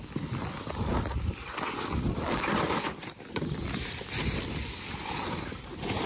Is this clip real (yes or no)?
yes